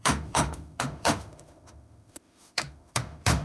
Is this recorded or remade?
remade